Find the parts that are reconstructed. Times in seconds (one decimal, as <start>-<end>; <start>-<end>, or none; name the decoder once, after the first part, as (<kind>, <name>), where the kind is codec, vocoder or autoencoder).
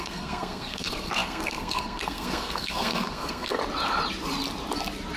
0.0-3.6 (codec, SNAC)